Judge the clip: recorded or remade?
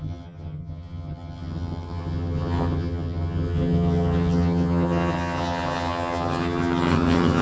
remade